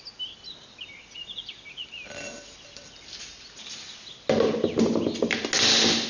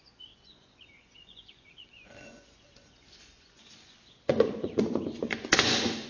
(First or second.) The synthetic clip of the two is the second